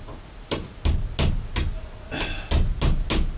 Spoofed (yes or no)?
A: no